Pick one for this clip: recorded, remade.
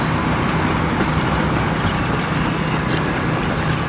recorded